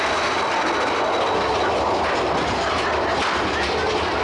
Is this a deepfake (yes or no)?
no